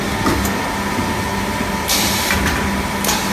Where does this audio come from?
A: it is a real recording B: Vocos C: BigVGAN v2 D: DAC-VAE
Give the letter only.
A